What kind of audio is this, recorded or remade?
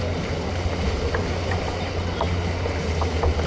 recorded